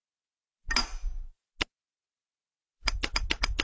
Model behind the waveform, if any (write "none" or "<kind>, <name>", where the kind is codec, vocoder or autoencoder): none